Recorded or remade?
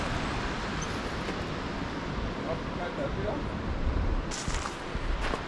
recorded